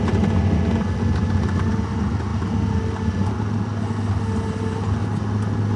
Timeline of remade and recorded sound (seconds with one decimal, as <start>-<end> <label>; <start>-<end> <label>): 0.0-5.8 recorded